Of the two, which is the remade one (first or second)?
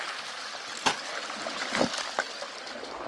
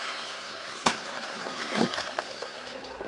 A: second